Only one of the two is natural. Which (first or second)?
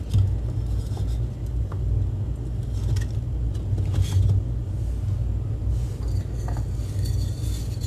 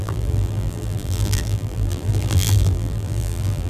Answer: first